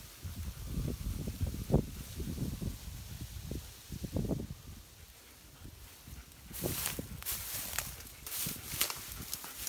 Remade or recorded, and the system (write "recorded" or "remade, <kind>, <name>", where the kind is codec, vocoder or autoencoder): recorded